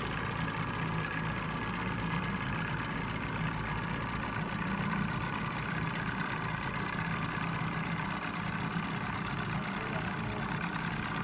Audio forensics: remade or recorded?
recorded